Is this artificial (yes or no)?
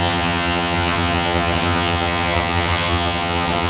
yes